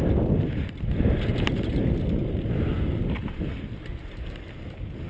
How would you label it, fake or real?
real